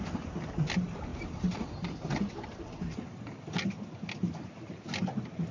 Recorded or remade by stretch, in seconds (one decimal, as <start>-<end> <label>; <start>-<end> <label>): 0.0-5.5 recorded